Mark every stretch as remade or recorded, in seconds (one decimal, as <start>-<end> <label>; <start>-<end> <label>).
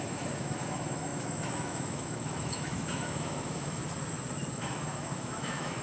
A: 0.0-3.8 remade; 3.8-4.5 recorded; 4.5-5.8 remade